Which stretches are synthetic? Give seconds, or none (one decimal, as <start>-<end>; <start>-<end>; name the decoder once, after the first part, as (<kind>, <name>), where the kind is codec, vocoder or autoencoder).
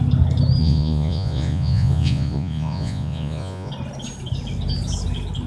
0.6-3.7 (vocoder, Vocos)